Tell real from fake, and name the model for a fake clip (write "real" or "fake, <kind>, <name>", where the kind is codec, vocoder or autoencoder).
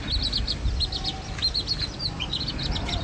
real